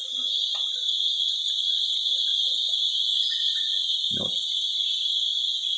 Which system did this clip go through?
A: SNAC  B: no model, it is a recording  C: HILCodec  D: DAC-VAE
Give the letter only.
B